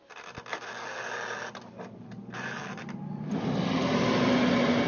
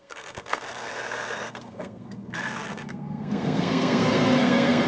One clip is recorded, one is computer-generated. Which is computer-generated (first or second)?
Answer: second